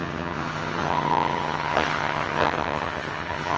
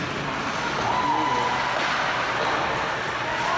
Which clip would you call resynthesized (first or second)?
first